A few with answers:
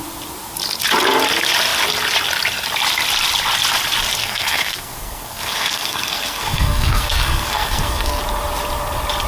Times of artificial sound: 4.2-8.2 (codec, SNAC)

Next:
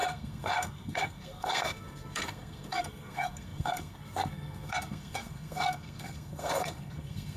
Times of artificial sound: 0.0-7.4 (codec, SNAC)

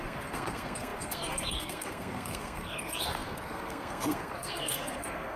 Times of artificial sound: 0.0-5.4 (codec, SNAC)

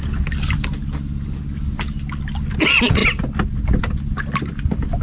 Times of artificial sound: none

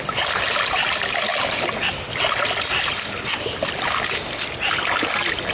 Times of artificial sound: none

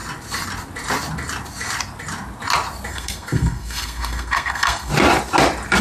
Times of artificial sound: 2.9-4.9 (codec, SNAC)

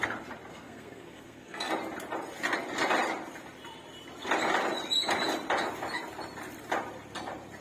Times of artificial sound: 0.5-1.7 (codec, SNAC)